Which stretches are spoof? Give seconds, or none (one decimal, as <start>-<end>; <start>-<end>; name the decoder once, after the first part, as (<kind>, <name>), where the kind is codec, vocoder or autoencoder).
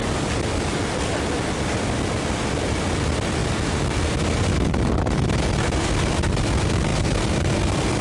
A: none